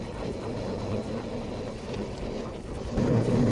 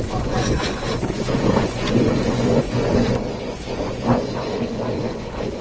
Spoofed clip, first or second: second